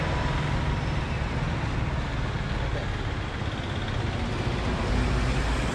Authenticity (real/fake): real